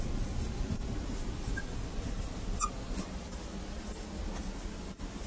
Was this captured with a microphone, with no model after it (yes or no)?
yes